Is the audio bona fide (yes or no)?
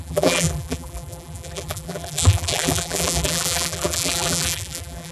no